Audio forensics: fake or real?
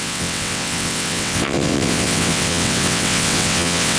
fake